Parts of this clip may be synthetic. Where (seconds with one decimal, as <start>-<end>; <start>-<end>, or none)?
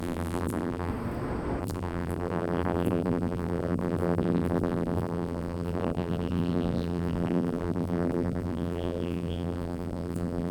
0.0-0.9; 1.6-10.5